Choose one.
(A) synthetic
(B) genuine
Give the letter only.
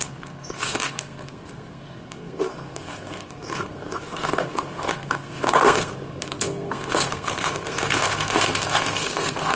A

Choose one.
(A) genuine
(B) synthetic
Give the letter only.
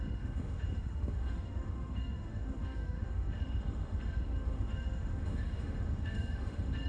B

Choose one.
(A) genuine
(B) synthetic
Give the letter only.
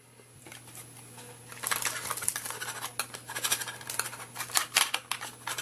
A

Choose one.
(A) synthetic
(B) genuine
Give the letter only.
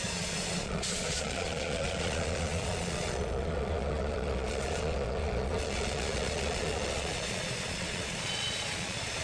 A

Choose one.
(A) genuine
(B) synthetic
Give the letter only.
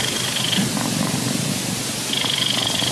A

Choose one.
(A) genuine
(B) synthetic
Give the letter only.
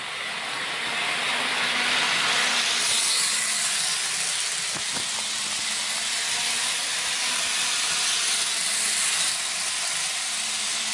A